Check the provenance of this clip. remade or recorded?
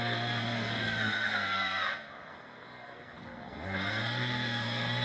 remade